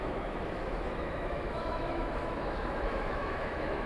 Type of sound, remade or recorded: remade